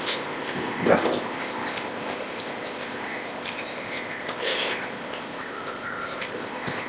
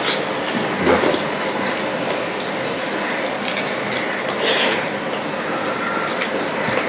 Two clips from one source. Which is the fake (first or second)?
first